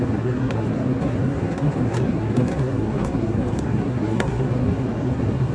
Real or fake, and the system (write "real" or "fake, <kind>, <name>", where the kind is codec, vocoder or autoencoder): fake, codec, SNAC